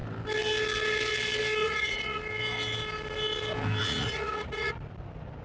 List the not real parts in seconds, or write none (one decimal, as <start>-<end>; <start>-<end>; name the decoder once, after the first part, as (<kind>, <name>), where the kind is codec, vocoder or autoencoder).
1.6-2.2 (vocoder, Vocos); 3.8-4.7